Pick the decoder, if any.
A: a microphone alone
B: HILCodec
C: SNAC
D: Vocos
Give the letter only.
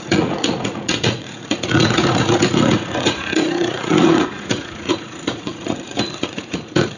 D